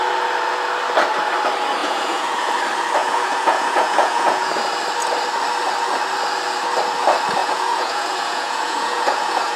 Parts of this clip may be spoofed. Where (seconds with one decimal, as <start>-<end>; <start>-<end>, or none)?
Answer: 1.8-2.5; 3.0-4.5; 7.4-9.6